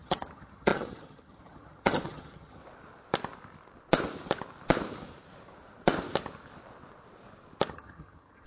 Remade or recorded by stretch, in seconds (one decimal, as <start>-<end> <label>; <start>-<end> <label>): 0.0-2.6 remade; 2.6-7.7 recorded; 7.7-8.5 remade